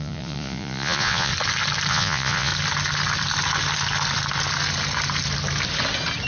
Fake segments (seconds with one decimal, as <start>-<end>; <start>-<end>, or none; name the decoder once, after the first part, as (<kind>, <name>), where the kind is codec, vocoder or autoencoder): 0.0-1.3 (vocoder, Vocos); 1.9-2.5